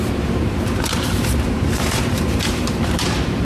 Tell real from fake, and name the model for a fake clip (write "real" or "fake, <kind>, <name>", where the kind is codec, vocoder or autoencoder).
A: fake, vocoder, BigVGAN v2